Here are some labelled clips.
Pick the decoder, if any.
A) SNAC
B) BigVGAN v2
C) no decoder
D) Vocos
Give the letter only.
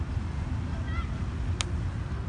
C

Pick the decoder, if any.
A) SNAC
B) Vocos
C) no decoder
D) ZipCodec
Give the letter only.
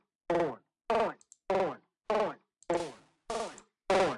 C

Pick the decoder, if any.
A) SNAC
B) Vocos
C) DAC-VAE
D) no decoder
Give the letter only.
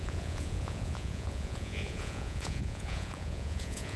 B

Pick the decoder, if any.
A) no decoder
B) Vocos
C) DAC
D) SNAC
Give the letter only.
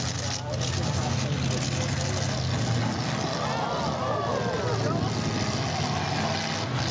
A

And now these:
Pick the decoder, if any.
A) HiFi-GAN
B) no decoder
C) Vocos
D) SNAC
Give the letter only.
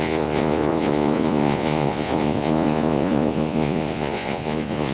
C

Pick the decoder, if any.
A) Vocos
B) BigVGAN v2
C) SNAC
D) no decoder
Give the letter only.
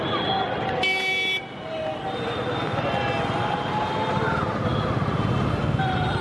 D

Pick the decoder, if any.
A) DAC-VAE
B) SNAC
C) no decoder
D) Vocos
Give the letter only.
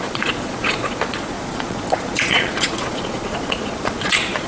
D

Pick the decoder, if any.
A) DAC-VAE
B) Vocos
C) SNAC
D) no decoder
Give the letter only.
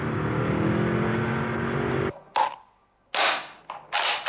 D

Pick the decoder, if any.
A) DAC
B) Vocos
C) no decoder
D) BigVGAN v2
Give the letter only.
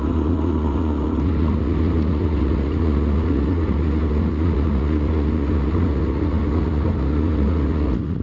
B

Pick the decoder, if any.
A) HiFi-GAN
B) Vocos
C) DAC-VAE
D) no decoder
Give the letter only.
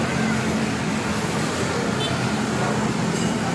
D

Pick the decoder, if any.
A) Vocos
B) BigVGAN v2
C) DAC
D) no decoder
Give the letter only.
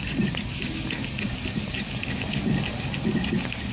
D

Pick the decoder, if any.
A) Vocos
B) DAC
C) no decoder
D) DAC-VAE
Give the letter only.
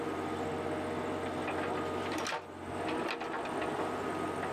C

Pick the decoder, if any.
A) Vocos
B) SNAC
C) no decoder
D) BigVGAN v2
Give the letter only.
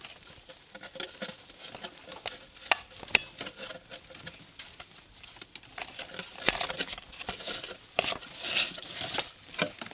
C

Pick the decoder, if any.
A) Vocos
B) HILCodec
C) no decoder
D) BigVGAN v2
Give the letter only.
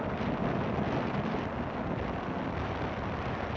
C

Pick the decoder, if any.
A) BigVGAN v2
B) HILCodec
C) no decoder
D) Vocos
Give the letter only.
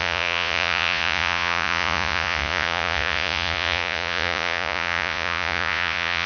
D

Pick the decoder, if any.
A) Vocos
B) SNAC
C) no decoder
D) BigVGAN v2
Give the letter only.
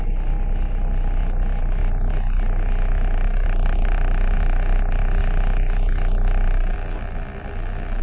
C